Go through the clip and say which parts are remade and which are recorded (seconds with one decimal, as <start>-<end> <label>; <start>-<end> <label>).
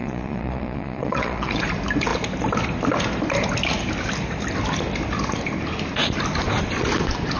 0.0-1.6 remade; 1.6-7.4 recorded